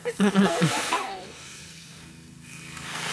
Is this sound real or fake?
fake